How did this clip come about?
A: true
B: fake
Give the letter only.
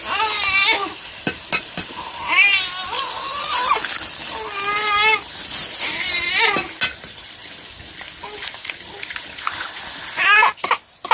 A